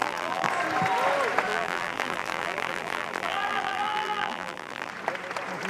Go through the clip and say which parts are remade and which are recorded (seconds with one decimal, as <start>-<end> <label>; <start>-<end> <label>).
0.0-0.5 remade; 0.5-1.5 recorded; 1.5-4.9 remade; 4.9-5.7 recorded